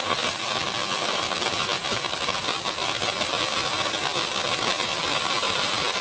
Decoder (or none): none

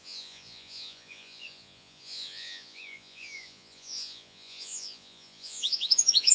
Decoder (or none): vocoder, Vocos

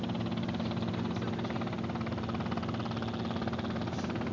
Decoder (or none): none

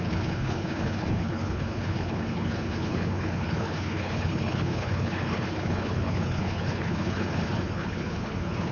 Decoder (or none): codec, HILCodec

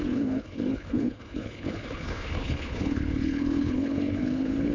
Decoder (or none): codec, HILCodec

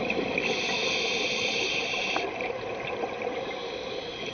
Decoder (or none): none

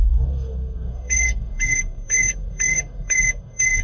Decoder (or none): codec, DAC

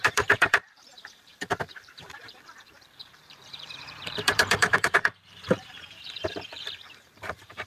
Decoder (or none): vocoder, BigVGAN v2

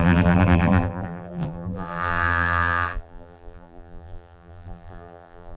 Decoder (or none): vocoder, BigVGAN v2